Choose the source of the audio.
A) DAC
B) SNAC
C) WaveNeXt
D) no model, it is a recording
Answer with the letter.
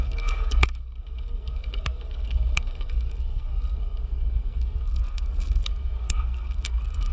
B